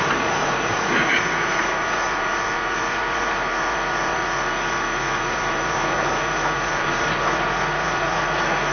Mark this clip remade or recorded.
remade